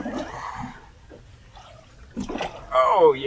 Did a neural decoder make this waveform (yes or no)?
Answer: no